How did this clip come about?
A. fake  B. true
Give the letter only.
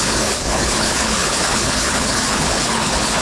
A